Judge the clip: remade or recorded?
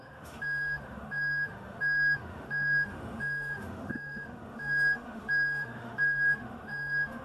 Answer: remade